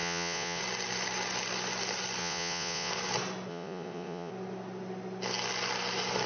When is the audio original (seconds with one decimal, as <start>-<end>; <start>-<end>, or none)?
0.6-2.2; 2.9-3.5; 4.3-6.3